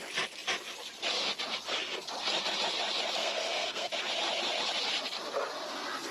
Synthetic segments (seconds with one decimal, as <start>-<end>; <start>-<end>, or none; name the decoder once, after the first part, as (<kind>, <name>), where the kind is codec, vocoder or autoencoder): 3.2-3.9 (codec, SNAC)